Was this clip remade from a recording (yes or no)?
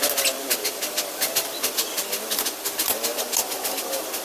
no